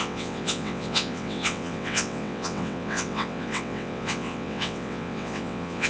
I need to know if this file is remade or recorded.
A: remade